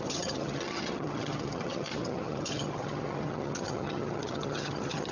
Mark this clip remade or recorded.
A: remade